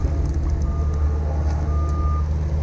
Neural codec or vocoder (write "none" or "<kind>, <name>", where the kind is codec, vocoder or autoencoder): none